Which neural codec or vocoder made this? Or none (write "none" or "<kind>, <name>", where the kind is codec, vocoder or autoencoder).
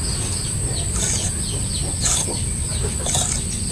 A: none